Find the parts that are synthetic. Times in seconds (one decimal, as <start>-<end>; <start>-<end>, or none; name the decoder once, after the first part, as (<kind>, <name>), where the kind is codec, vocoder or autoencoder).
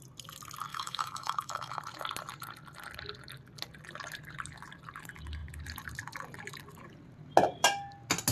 0.7-1.8 (autoencoder, DAC-VAE)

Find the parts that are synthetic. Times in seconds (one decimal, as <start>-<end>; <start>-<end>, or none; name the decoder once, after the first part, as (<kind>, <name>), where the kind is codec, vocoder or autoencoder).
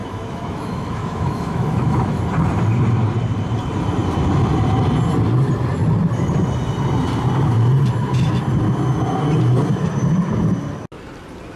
0.0-2.2 (autoencoder, DAC-VAE)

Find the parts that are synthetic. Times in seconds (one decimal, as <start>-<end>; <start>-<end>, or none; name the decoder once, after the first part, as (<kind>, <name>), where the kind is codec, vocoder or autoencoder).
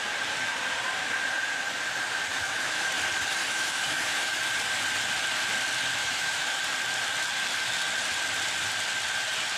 2.3-2.9 (autoencoder, DAC-VAE); 3.4-4.4; 6.0-6.6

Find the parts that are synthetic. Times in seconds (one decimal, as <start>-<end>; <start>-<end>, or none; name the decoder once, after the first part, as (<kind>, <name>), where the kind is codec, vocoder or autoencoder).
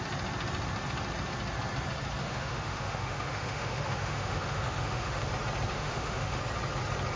2.2-5.3 (autoencoder, DAC-VAE); 5.7-6.4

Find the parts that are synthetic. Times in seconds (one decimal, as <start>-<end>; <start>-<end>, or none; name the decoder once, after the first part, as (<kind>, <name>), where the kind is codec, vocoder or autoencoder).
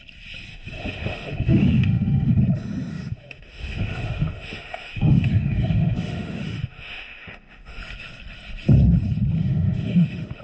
0.5-2.4 (autoencoder, DAC-VAE); 2.9-7.8; 9.4-10.4